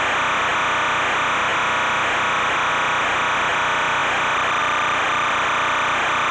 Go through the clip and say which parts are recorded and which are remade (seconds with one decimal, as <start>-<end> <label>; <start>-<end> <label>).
0.0-6.3 recorded